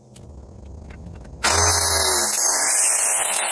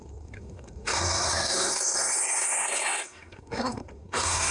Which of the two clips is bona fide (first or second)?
first